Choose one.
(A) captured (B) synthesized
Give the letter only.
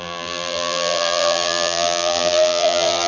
B